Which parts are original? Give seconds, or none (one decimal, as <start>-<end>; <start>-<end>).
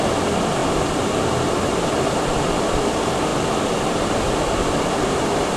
0.0-5.6